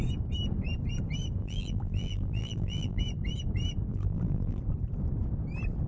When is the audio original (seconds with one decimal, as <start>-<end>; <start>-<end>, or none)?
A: 0.0-1.4; 3.0-3.9; 4.6-5.9